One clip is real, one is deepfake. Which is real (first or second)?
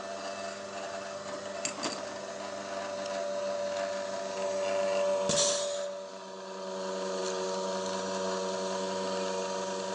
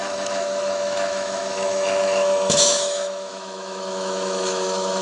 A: first